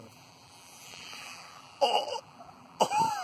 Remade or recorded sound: remade